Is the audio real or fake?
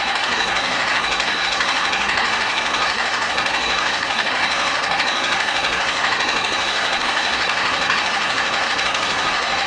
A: fake